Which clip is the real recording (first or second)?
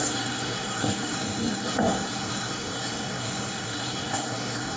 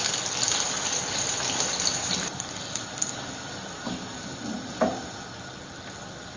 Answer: second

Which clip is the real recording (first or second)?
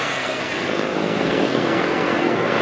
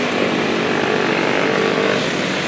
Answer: second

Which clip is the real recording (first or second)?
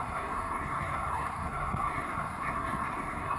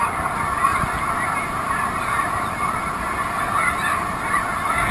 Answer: second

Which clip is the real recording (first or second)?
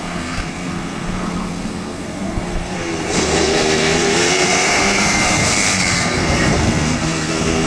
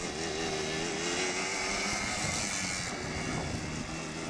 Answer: second